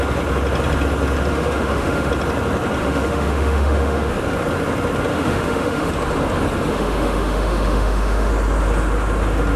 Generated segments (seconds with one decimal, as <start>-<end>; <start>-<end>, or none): 1.3-2.1; 2.8-4.1; 5.1-5.9; 6.7-8.3